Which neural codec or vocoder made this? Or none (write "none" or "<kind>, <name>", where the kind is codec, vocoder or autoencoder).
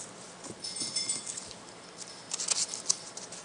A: none